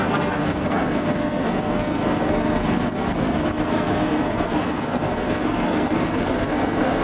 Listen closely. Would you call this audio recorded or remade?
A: remade